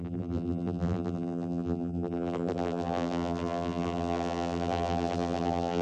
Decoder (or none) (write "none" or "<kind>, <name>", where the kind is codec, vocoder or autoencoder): vocoder, BigVGAN v2